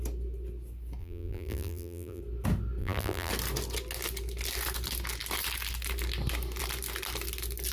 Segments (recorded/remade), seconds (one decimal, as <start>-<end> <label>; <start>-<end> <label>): 0.0-1.0 recorded; 1.0-2.2 remade; 2.2-2.8 recorded; 2.8-3.3 remade; 3.3-7.7 recorded

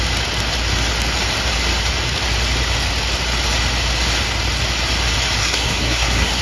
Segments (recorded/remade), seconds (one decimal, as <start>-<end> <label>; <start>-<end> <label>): 0.0-5.4 recorded; 5.4-6.4 remade

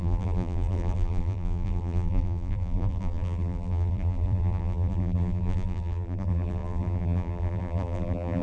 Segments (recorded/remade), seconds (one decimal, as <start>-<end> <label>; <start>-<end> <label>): 0.0-8.4 remade

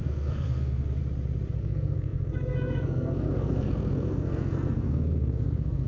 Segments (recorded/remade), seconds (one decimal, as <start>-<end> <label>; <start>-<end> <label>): 0.0-1.0 remade; 1.0-1.6 recorded; 1.6-5.9 remade

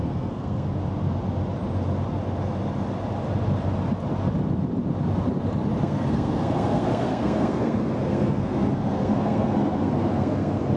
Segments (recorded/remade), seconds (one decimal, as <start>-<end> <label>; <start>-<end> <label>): 0.0-0.8 remade; 0.8-5.8 recorded; 5.8-10.8 remade